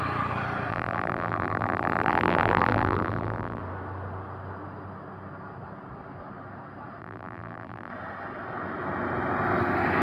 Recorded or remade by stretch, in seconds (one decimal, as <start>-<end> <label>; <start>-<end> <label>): 0.0-0.7 recorded; 0.7-3.6 remade; 3.6-7.0 recorded; 7.0-7.9 remade; 7.9-10.0 recorded

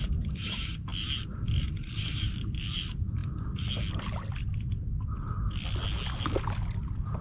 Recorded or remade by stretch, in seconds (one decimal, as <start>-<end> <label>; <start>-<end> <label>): 0.0-0.9 remade; 0.9-1.6 recorded; 1.6-3.2 remade; 3.2-7.2 recorded

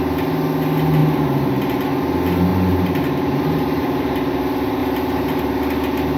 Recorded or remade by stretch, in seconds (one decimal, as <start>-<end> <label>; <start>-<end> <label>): 0.0-2.5 recorded; 2.5-4.3 remade; 4.3-4.8 recorded; 4.8-5.4 remade; 5.4-6.2 recorded

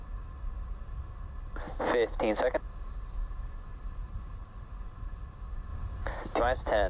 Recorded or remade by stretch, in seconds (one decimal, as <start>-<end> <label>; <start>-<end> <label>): 0.0-4.4 recorded; 4.4-5.0 remade; 5.0-5.7 recorded; 5.7-6.4 remade; 6.4-6.9 recorded

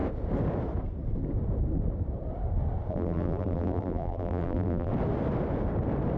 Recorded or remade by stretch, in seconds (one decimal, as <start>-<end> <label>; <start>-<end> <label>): 0.0-2.9 recorded; 2.9-4.9 remade; 4.9-6.2 recorded

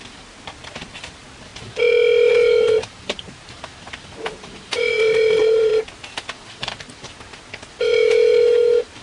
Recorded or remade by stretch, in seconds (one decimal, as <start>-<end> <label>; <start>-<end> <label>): 0.0-1.5 remade; 1.5-3.3 recorded; 3.3-5.7 remade; 5.7-9.0 recorded

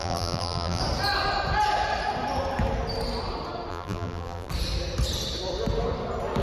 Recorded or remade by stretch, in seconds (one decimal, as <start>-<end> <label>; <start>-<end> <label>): 0.0-0.8 remade; 0.8-3.7 recorded; 3.7-4.5 remade; 4.5-6.4 recorded

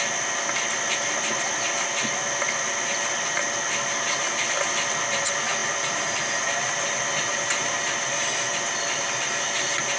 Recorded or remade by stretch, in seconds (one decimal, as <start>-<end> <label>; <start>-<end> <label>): 0.0-5.6 recorded; 5.6-10.0 remade